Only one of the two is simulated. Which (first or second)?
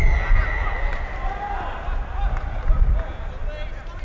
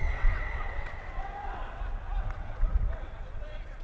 second